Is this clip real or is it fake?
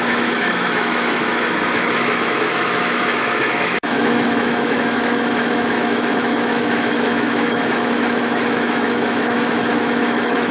fake